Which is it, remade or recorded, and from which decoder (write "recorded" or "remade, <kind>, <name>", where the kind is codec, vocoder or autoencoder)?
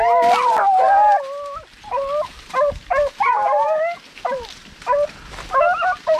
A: recorded